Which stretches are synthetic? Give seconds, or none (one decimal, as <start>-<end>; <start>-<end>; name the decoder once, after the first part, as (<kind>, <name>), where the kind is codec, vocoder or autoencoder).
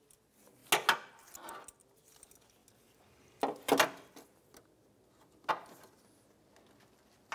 none